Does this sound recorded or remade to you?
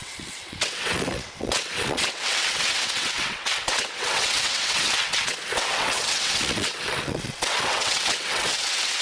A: remade